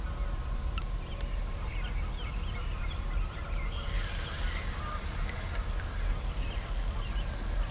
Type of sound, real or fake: real